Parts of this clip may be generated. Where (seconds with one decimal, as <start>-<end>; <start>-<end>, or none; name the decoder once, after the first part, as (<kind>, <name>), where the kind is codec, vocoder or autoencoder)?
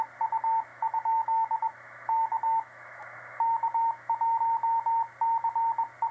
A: 0.7-4.4 (autoencoder, DAC-VAE)